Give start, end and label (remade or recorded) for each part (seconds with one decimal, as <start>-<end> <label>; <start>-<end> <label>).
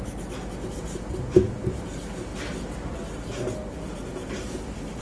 0.0-5.0 recorded